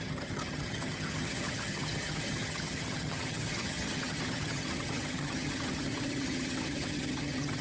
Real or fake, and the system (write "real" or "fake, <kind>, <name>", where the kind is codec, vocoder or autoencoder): fake, vocoder, HiFi-GAN